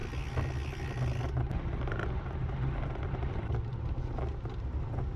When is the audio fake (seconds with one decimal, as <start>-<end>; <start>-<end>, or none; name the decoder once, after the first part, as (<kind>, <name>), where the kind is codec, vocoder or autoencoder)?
none